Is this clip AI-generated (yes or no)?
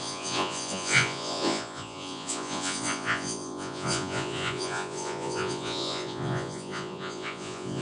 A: yes